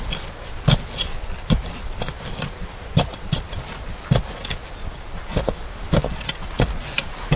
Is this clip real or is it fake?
real